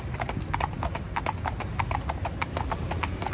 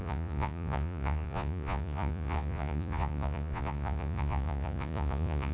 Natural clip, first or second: first